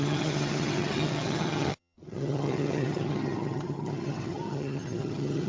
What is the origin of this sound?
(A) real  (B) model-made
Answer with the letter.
B